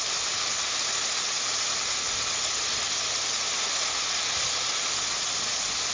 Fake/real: real